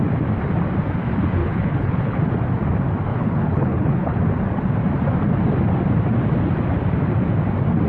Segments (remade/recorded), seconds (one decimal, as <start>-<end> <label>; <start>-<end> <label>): 0.0-1.4 recorded; 1.4-2.2 remade; 2.2-3.1 recorded; 3.1-4.2 remade; 4.2-7.9 recorded